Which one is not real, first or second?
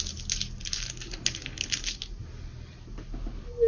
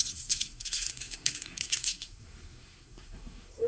second